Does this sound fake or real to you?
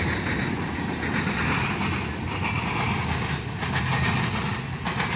real